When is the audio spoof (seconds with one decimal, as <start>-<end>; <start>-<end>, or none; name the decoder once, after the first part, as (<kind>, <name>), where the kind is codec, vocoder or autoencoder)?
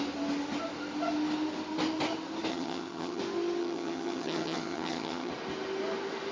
2.5-3.2 (vocoder, HiFi-GAN); 3.6-5.3